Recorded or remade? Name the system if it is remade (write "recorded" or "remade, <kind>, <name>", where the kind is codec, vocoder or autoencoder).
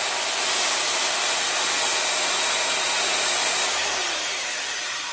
recorded